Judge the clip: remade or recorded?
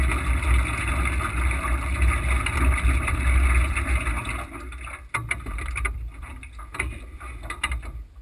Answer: recorded